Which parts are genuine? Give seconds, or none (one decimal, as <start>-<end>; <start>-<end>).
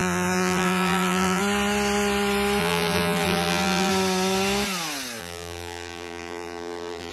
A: 1.4-2.6; 3.9-5.2